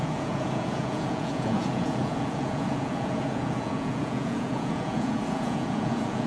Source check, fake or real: fake